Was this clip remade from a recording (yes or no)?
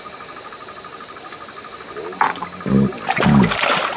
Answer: no